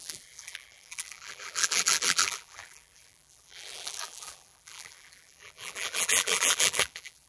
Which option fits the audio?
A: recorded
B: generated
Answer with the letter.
B